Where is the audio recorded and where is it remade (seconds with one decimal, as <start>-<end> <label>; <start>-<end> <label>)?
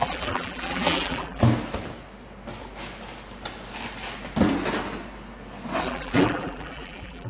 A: 0.0-1.4 remade; 1.4-5.8 recorded; 5.8-7.3 remade